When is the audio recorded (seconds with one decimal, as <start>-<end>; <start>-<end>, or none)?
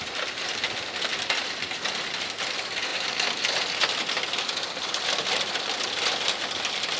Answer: 0.0-7.0